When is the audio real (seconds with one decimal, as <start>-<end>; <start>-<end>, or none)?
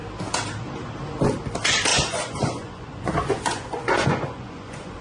0.0-1.9